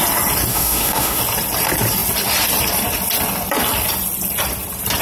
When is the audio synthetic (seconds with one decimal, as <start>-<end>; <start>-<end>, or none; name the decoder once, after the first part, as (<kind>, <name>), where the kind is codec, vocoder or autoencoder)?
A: 0.5-1.2 (autoencoder, DAC-VAE)